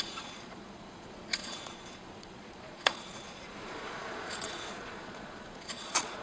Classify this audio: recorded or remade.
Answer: remade